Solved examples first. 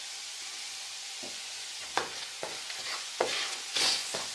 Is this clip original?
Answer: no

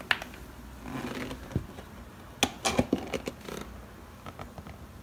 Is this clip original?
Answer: yes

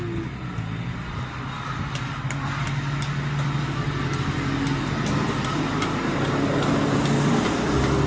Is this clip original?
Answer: yes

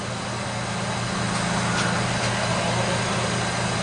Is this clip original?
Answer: yes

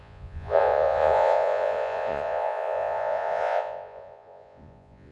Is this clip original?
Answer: no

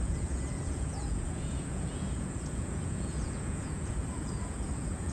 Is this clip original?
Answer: no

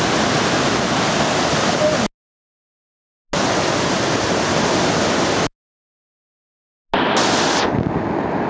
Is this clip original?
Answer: yes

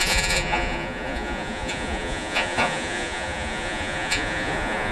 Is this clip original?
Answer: no